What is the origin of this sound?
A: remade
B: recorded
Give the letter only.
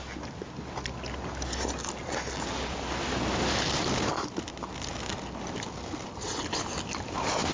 B